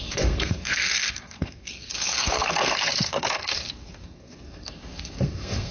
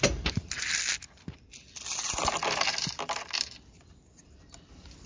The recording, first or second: second